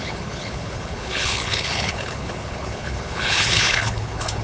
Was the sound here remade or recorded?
remade